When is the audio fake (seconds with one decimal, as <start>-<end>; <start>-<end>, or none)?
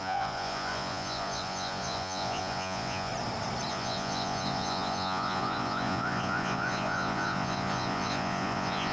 0.0-3.1; 3.7-8.9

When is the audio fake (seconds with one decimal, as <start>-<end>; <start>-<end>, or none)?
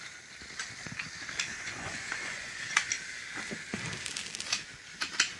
1.5-2.9